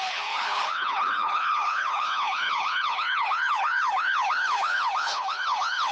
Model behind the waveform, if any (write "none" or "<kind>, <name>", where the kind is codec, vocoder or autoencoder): codec, HILCodec